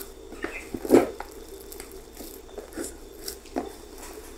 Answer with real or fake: real